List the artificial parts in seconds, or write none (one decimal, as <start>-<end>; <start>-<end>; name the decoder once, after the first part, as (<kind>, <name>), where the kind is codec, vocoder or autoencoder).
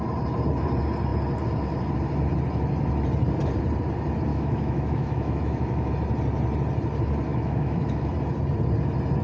4.3-5.9 (autoencoder, DAC-VAE); 7.3-8.1